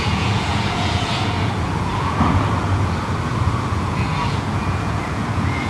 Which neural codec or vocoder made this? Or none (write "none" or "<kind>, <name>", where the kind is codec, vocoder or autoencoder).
vocoder, Vocos